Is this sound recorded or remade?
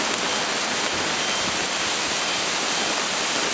recorded